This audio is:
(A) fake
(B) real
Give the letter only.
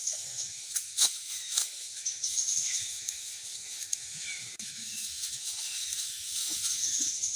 A